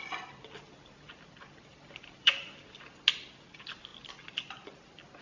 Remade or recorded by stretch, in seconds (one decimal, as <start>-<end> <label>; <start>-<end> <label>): 0.0-1.7 recorded; 1.7-2.6 remade; 2.6-5.2 recorded